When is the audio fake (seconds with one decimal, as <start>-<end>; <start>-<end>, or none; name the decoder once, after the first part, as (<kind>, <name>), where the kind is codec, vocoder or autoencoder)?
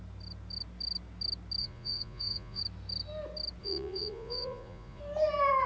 1.6-2.6 (vocoder, Vocos); 3.6-5.0